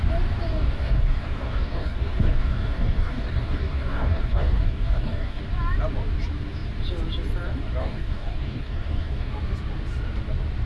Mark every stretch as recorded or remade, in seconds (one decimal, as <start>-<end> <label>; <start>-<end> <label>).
0.0-0.5 recorded; 0.5-5.4 remade; 5.4-7.8 recorded; 7.8-9.3 remade; 9.3-10.7 recorded